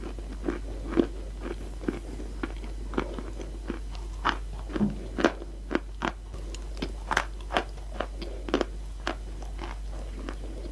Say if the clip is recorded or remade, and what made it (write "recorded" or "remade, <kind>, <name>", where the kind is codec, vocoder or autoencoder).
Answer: recorded